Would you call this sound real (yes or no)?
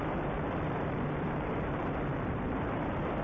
no